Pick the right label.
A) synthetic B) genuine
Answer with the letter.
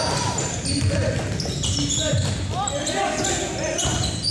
B